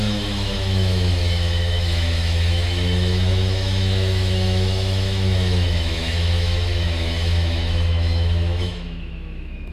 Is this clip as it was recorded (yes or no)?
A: no